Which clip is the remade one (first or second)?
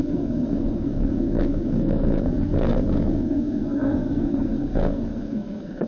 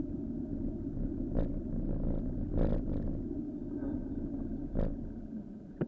first